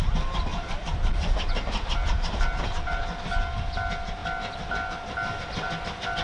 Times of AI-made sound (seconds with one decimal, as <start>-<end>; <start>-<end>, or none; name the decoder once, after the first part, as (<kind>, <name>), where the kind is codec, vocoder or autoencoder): 0.5-3.0 (vocoder, BigVGAN v2)